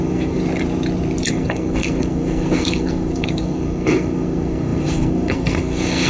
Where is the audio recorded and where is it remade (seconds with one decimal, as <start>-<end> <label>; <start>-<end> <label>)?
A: 0.0-0.4 remade; 0.4-1.3 recorded; 1.3-6.1 remade